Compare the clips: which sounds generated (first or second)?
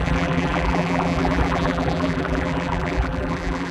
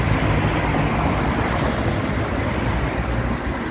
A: first